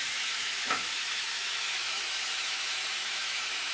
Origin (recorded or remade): remade